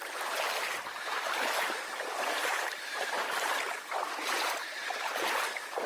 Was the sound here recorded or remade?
remade